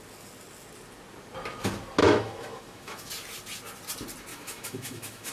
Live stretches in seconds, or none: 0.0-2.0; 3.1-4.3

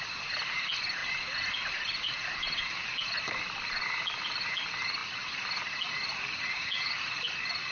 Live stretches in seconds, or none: 0.0-1.0; 2.6-6.0; 7.3-7.7

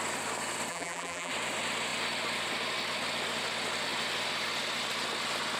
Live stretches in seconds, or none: 0.0-0.7; 1.3-5.6